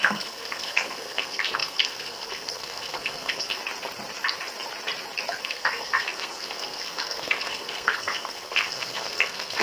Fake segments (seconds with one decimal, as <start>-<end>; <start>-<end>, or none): 0.0-3.6; 5.4-9.6